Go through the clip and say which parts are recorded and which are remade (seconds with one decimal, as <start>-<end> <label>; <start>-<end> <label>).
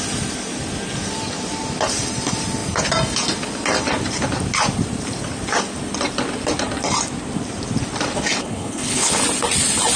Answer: 0.0-8.4 recorded; 8.4-9.2 remade; 9.2-10.0 recorded